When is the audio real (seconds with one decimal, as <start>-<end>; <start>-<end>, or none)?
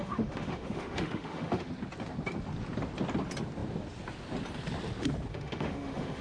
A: 1.7-5.3